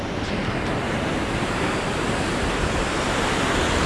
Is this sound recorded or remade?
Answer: recorded